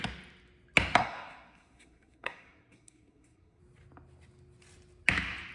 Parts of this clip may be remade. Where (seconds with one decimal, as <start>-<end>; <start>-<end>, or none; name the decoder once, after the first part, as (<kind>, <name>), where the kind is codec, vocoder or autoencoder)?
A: 1.0-3.6 (codec, SNAC)